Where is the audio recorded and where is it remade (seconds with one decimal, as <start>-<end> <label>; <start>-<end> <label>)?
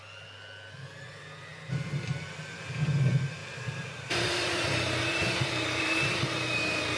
0.0-3.4 recorded; 3.4-6.2 remade; 6.2-7.0 recorded